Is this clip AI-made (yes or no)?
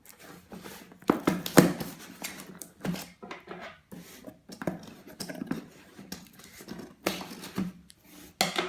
no